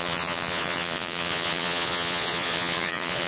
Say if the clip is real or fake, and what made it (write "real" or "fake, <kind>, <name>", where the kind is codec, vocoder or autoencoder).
fake, vocoder, Vocos